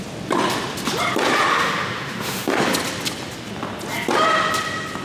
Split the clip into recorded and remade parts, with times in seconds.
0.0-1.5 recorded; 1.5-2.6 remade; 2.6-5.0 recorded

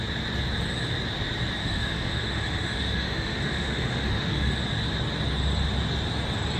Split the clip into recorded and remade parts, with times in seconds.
0.0-1.6 recorded; 1.6-4.5 remade; 4.5-6.6 recorded

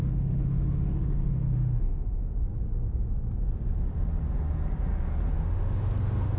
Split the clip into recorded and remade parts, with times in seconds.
0.0-2.2 remade; 2.2-5.3 recorded; 5.3-6.4 remade

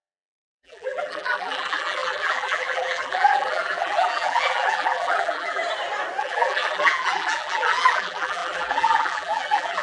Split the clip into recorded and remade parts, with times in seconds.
0.0-5.6 remade; 5.6-6.2 recorded; 6.2-9.8 remade

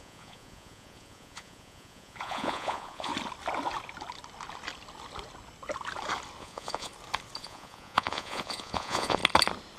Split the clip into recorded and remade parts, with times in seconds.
0.0-3.1 remade; 3.1-6.4 recorded; 6.4-6.9 remade; 6.9-7.4 recorded; 7.4-9.2 remade; 9.2-9.8 recorded

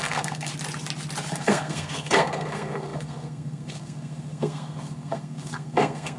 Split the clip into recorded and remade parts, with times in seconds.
0.0-0.5 remade; 0.5-1.3 recorded; 1.3-6.2 remade

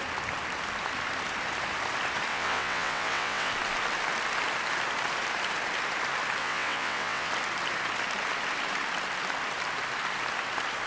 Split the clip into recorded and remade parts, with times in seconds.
0.0-2.3 recorded; 2.3-3.5 remade; 3.5-6.4 recorded; 6.4-7.3 remade; 7.3-10.9 recorded

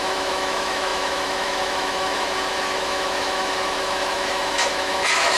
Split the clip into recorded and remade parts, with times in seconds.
0.0-5.4 remade